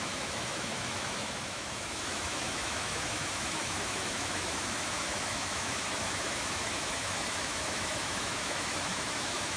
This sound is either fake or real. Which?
fake